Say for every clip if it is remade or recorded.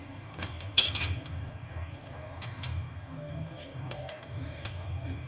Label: remade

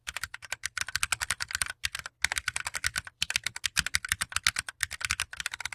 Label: recorded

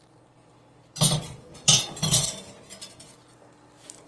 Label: recorded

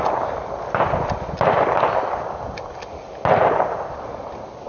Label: recorded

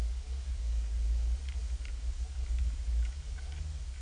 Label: remade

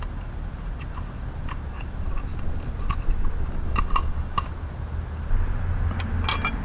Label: recorded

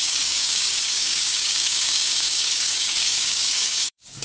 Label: remade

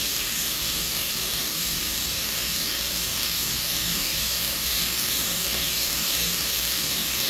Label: remade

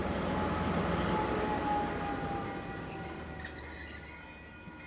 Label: recorded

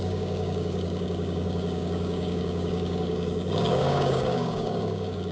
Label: remade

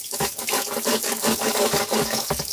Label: remade